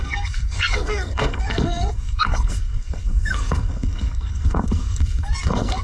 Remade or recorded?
remade